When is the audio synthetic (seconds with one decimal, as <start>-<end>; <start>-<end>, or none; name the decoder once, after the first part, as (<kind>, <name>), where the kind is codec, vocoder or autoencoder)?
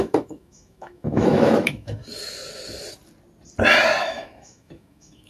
0.0-2.0 (autoencoder, DAC-VAE); 4.0-5.3